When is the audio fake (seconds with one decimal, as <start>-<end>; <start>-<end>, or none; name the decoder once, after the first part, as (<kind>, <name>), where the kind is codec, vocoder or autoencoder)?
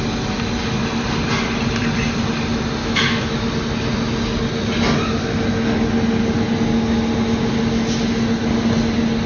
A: 2.8-3.5 (autoencoder, DAC-VAE)